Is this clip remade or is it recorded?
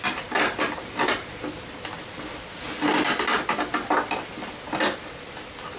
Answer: recorded